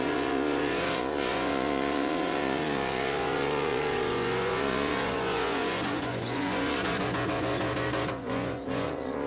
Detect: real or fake fake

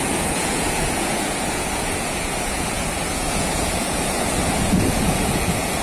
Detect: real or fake fake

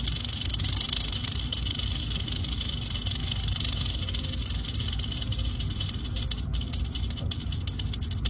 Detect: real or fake real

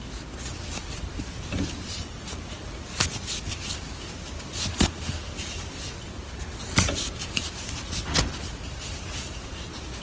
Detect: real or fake real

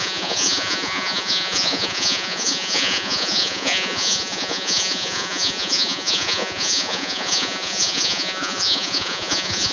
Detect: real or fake fake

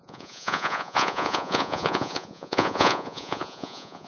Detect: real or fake fake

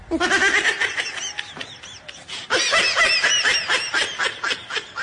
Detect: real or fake real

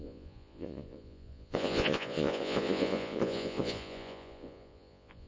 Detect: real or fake fake